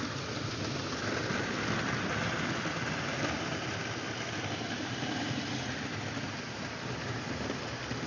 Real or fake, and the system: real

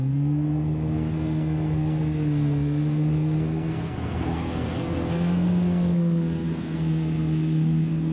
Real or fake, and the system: fake, codec, SNAC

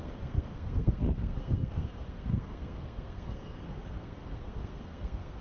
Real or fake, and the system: fake, codec, SNAC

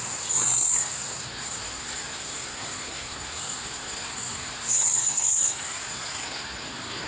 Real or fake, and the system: fake, codec, SNAC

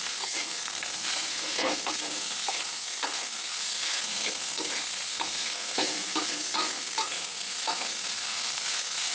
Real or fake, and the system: fake, codec, SNAC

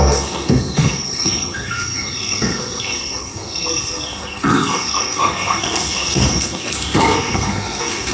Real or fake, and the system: fake, codec, SNAC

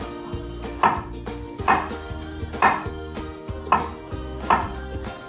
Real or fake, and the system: real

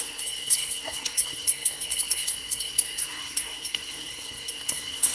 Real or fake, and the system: fake, codec, SNAC